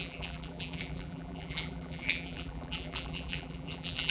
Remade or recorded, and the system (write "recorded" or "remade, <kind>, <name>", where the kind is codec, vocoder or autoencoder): remade, vocoder, BigVGAN v2